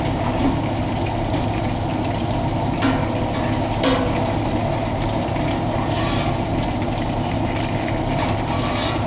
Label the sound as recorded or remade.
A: recorded